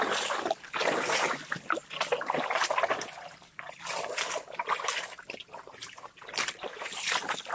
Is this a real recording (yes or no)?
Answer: yes